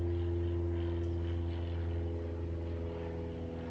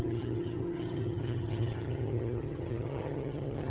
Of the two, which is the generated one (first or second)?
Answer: second